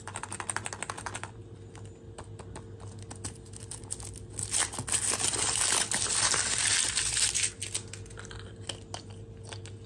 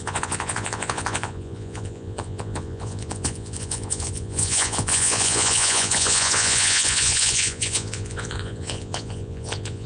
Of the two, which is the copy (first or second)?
second